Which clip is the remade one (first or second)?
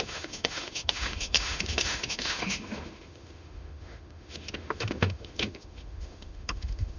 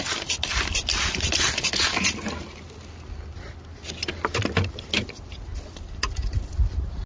first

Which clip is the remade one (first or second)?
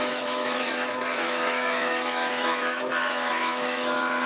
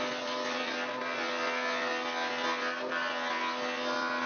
first